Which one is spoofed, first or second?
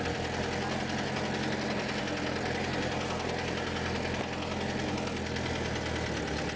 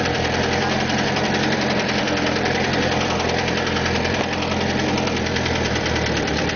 second